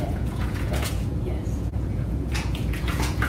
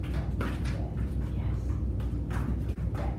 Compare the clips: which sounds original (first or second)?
second